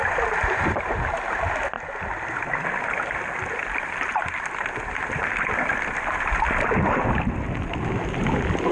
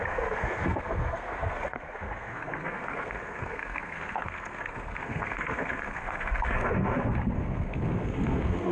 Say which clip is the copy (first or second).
second